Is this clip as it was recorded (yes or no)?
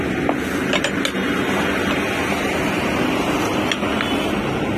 yes